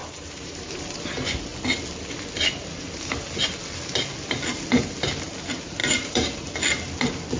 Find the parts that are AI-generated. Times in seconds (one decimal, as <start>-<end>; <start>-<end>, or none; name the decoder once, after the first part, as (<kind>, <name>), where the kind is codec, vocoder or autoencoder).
0.0-0.8 (vocoder, BigVGAN v2); 5.8-6.5